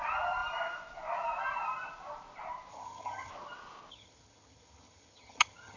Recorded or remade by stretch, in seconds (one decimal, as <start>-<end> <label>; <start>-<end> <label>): 0.0-2.7 recorded; 2.7-3.3 remade; 3.3-3.9 recorded; 3.9-5.8 remade